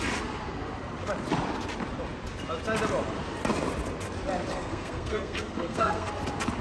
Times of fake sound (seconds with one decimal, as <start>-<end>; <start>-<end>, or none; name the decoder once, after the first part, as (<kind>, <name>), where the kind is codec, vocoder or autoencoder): 4.5-6.1 (codec, SNAC)